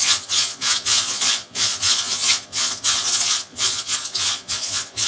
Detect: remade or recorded remade